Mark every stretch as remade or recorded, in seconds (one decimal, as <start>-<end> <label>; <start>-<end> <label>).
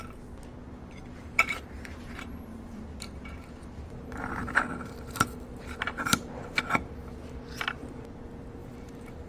0.0-0.6 recorded; 0.6-2.1 remade; 2.1-2.5 recorded; 2.5-6.6 remade; 6.6-8.6 recorded; 8.6-9.3 remade